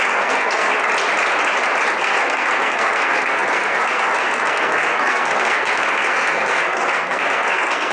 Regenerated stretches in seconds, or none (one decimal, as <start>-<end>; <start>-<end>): 0.0-0.7; 2.0-7.9